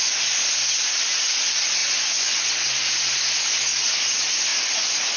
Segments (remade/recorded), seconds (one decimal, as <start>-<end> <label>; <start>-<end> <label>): 0.0-1.8 recorded; 1.8-2.5 remade; 2.5-5.2 recorded